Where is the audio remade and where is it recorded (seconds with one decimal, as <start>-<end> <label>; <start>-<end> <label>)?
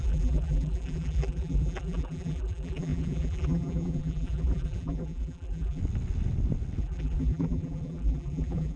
0.0-5.8 remade; 5.8-6.8 recorded; 6.8-8.8 remade